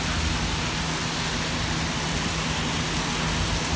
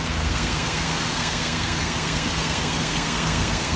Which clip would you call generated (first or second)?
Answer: second